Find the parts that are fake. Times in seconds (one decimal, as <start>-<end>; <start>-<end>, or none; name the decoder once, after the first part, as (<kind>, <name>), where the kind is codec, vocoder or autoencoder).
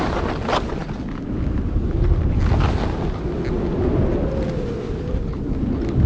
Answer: none